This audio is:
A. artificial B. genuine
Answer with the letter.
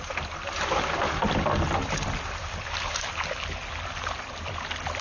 B